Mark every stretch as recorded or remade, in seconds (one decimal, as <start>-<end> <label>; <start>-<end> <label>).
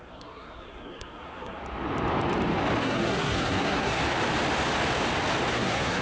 0.0-1.6 remade; 1.6-2.8 recorded; 2.8-4.0 remade; 4.0-5.5 recorded; 5.5-6.0 remade